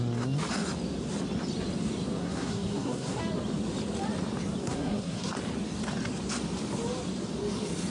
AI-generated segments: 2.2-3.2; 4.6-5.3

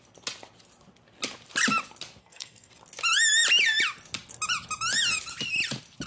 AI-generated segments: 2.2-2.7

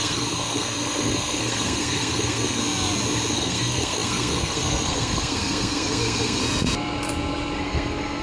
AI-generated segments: 0.0-2.6; 3.3-6.4; 7.6-8.2